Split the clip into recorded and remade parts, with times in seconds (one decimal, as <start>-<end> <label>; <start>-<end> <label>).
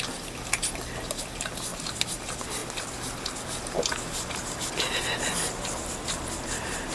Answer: 0.0-1.7 recorded; 1.7-2.2 remade; 2.2-6.9 recorded